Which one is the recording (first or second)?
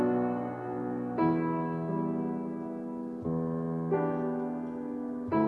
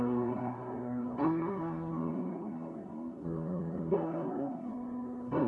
first